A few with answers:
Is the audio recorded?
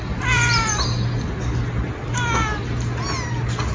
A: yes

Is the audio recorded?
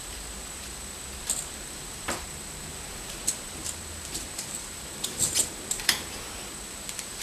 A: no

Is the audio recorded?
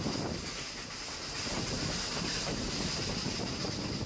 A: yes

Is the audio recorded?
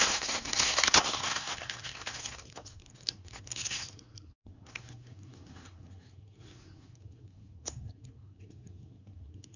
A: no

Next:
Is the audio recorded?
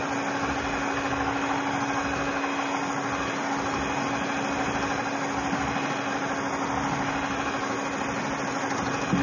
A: yes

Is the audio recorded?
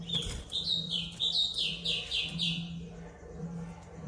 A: yes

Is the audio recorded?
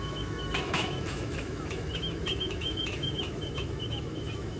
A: no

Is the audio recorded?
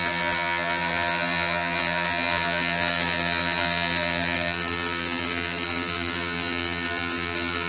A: no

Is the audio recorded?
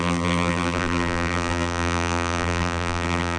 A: no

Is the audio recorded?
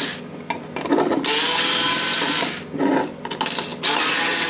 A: yes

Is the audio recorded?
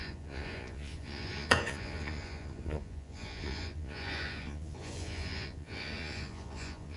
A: no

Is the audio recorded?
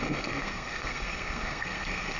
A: no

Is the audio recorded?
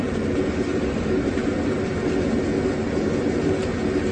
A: yes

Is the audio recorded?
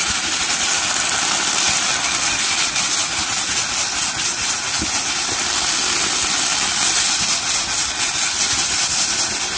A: yes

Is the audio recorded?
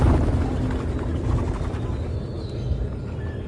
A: yes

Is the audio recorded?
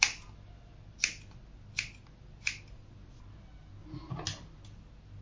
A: yes